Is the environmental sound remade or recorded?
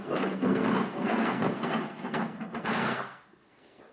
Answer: remade